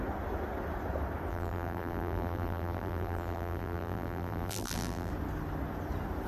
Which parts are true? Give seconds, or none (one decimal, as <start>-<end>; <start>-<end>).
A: 0.0-1.3; 5.1-6.3

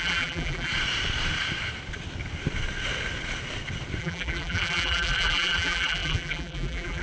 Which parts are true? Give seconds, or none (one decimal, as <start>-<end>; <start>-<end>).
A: 0.7-4.0

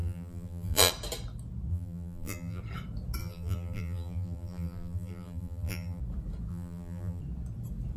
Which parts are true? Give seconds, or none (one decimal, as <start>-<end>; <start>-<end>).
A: 0.9-1.7; 2.6-3.2; 6.0-6.5; 7.2-8.0